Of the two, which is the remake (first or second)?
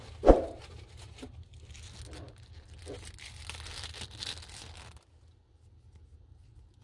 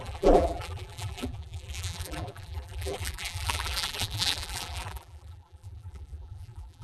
second